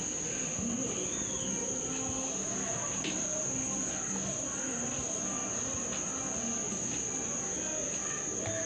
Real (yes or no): yes